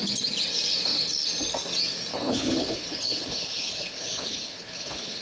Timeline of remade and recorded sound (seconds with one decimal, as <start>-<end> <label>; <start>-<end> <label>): 0.0-2.1 recorded; 2.1-5.2 remade